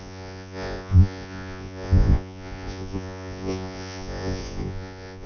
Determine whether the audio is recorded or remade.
remade